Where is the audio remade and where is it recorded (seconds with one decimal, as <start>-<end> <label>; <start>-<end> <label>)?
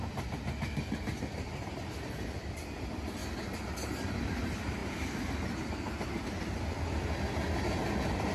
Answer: 0.0-8.3 recorded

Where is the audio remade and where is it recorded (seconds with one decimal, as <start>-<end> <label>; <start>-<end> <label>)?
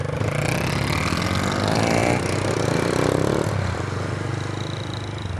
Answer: 0.0-5.4 recorded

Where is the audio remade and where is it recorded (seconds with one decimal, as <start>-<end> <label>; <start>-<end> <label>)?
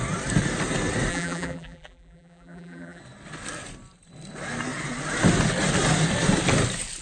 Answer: 0.0-1.1 recorded; 1.1-3.0 remade; 3.0-7.0 recorded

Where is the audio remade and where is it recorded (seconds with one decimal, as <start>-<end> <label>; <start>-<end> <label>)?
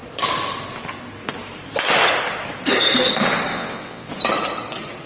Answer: 0.0-3.5 recorded; 3.5-4.1 remade; 4.1-5.1 recorded